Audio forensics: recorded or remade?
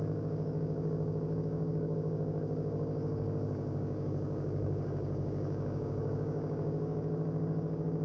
remade